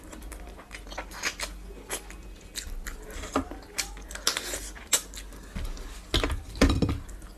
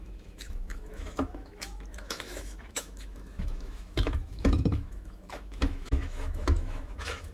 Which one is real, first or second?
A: first